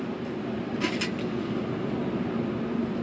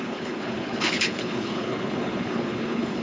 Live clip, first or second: first